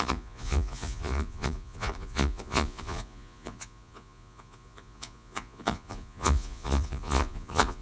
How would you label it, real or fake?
fake